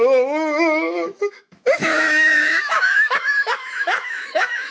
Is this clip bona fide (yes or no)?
no